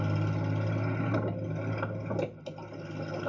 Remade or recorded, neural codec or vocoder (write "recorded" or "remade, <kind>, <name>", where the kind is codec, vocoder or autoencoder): recorded